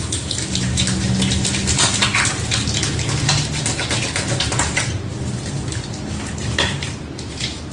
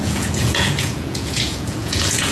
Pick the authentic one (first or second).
first